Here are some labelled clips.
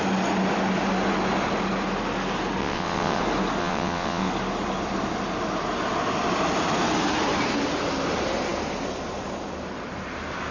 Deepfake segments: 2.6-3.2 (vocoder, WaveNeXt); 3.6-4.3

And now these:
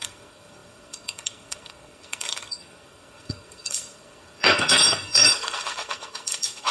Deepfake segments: 0.0-6.7 (codec, SNAC)

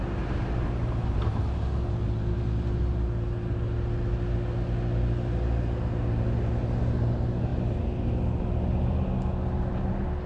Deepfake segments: none